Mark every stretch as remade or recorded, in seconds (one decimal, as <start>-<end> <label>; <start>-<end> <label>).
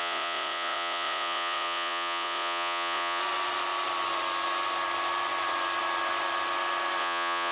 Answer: 0.0-3.2 remade; 3.2-7.0 recorded; 7.0-7.5 remade